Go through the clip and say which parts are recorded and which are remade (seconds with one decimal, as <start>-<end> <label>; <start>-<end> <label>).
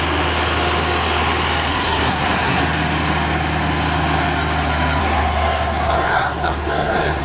0.0-1.7 recorded; 1.7-2.6 remade; 2.6-5.0 recorded; 5.0-7.2 remade